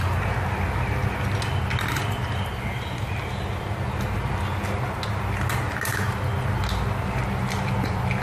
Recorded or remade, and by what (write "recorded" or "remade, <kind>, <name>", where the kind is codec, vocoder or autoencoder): recorded